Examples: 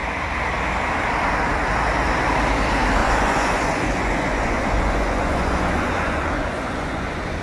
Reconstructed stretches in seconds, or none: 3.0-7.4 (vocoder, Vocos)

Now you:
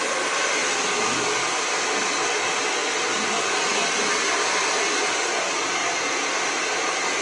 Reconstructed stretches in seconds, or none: none

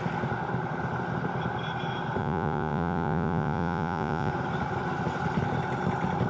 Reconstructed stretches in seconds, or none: 2.2-4.3 (vocoder, Vocos)

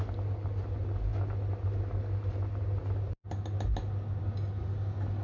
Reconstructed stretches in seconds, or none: none

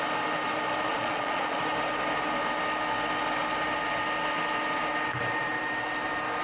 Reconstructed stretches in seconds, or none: 0.9-1.6 (vocoder, Vocos)

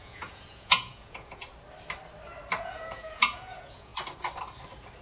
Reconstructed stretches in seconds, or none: 0.0-1.5 (vocoder, Vocos); 2.6-3.9

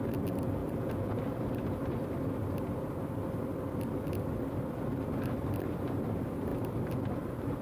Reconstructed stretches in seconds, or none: 0.6-1.2 (vocoder, Vocos)

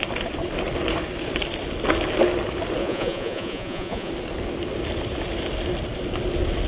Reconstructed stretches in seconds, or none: 2.8-4.1 (vocoder, Vocos)